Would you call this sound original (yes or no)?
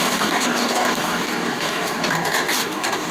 no